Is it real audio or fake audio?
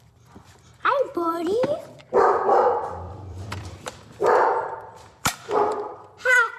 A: fake